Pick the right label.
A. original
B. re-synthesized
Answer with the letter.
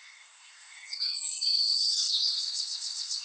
B